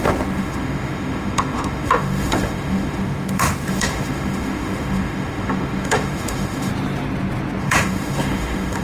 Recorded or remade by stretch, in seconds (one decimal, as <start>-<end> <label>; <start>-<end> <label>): 0.0-6.7 remade; 6.7-7.6 recorded; 7.6-8.8 remade